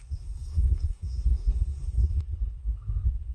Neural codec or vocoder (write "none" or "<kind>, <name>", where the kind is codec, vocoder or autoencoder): codec, SNAC